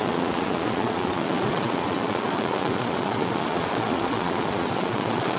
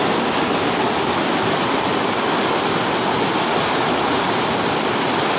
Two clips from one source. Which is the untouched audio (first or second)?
second